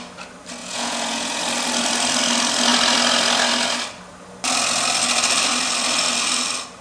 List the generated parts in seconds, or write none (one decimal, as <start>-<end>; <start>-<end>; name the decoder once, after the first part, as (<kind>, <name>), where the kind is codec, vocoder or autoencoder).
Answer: 0.6-1.4 (vocoder, Vocos)